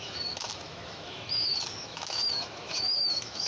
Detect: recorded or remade remade